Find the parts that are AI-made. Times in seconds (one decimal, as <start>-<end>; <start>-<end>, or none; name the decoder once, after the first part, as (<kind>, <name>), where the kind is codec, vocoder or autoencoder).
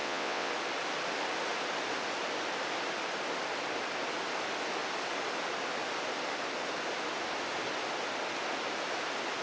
0.0-0.5 (vocoder, WaveNeXt)